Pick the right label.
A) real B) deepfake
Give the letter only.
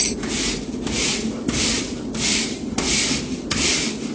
A